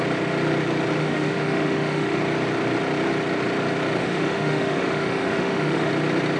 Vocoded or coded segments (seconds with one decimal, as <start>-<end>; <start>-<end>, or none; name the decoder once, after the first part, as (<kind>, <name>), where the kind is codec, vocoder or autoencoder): 1.0-2.2 (autoencoder, DAC-VAE); 4.0-5.9